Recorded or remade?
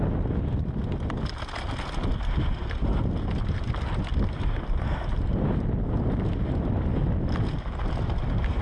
recorded